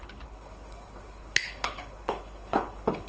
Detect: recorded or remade remade